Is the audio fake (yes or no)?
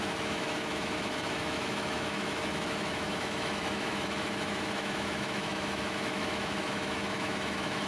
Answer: yes